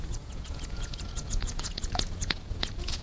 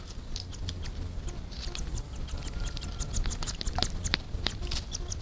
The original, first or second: second